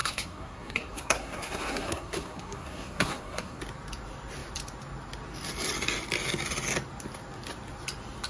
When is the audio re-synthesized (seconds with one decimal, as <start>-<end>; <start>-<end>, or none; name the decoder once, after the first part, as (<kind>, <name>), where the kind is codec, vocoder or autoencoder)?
0.0-3.6 (codec, SNAC)